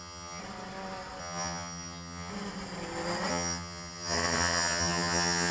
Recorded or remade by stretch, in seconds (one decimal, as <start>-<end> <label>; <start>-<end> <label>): 0.0-0.4 remade; 0.4-1.2 recorded; 1.2-2.3 remade; 2.3-3.3 recorded; 3.3-5.5 remade